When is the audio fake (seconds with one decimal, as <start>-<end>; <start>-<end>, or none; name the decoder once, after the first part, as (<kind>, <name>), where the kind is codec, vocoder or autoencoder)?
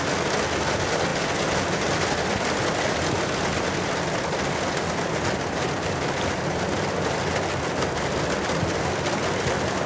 none